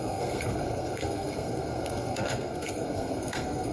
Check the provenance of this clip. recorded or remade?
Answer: remade